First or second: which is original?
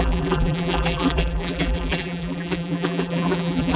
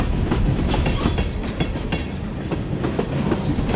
second